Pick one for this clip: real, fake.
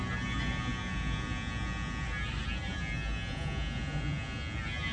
real